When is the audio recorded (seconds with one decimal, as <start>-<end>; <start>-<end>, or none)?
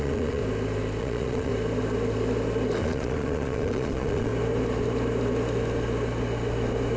0.4-1.0; 1.5-2.8; 4.3-7.0